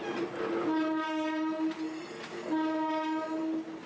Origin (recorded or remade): recorded